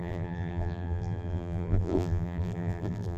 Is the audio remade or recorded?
remade